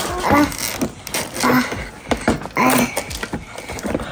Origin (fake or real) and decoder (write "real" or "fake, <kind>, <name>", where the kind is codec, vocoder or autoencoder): real